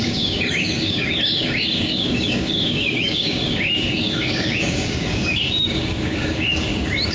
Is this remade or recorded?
remade